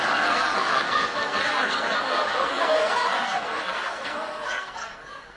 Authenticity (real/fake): fake